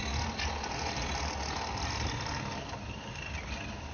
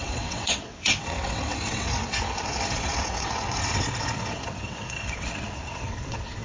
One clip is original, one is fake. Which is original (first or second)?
first